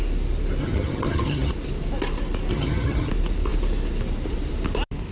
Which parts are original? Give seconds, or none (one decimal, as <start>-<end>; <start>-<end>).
0.0-0.6; 1.5-2.5; 3.1-5.1